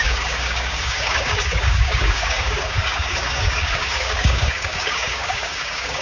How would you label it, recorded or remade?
remade